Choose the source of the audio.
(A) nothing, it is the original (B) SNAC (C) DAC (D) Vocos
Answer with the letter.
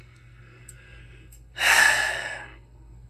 B